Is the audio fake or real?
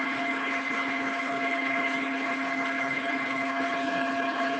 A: fake